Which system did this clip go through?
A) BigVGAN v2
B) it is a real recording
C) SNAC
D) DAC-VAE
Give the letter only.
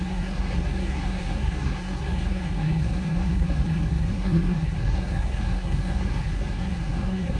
C